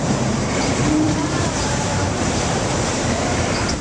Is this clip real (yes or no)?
no